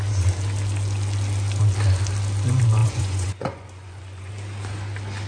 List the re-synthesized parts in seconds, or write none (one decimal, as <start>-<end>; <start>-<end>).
2.8-4.3